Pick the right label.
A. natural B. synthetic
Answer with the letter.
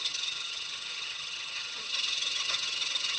B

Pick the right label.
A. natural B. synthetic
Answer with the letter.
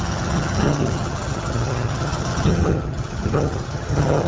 B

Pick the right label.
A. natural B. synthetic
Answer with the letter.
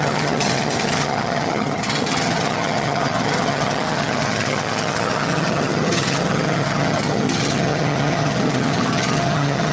B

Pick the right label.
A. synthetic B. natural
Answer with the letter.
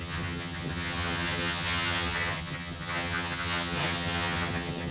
A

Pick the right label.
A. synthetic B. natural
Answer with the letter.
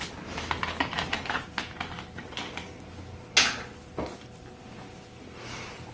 B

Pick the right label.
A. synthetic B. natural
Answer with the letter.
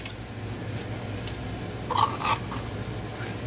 B